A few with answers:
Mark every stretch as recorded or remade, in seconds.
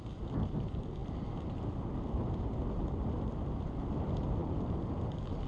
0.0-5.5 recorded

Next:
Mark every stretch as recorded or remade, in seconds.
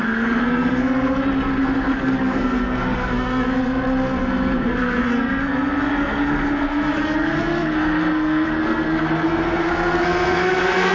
0.0-10.9 remade